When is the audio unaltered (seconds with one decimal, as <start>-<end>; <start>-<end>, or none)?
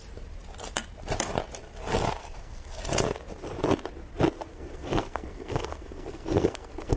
0.0-2.2; 2.8-4.5